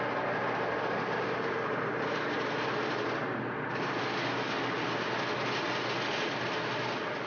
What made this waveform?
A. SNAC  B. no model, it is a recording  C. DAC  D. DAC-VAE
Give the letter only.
B